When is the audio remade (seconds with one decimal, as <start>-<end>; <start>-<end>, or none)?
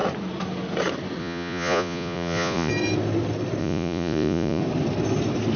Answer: 1.2-2.7; 3.6-4.6